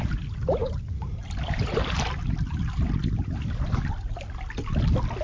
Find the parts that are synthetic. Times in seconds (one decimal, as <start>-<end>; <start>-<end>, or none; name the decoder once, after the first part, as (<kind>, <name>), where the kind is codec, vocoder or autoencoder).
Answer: none